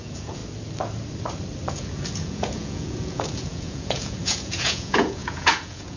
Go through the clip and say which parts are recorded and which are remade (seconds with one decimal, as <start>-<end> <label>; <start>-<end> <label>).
0.0-0.4 remade; 0.4-1.7 recorded; 1.7-6.0 remade